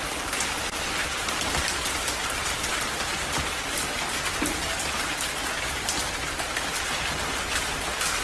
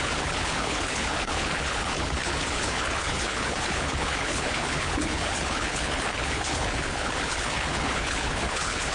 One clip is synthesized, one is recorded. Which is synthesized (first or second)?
second